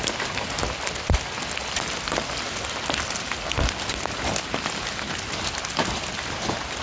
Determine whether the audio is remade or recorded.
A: recorded